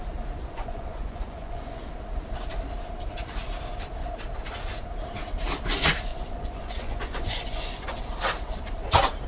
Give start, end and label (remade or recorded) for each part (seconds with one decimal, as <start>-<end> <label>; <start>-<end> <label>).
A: 0.0-0.4 recorded; 0.4-1.9 remade; 1.9-6.1 recorded; 6.1-8.0 remade; 8.0-9.3 recorded